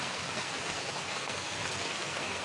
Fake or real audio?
fake